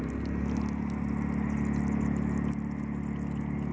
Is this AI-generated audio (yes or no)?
no